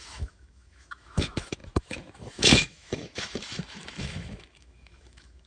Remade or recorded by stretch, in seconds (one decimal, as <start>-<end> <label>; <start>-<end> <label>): 0.0-5.5 remade